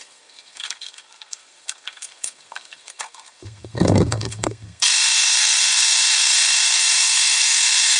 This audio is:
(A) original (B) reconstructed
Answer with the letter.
B